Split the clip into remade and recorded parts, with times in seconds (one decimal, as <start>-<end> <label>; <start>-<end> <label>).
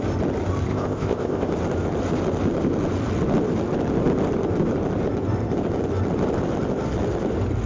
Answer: 0.0-0.7 recorded; 0.7-1.5 remade; 1.5-7.7 recorded